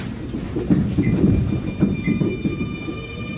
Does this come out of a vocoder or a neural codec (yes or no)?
yes